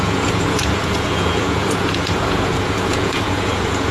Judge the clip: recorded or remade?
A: remade